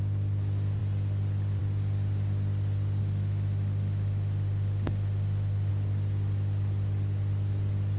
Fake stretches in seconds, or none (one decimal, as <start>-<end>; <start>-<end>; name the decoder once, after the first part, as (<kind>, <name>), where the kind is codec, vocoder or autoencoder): 3.0-5.7 (autoencoder, DAC-VAE)